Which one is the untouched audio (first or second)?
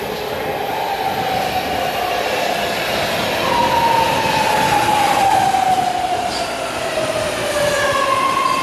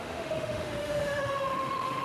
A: first